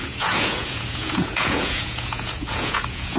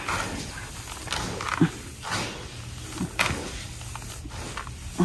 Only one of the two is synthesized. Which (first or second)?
first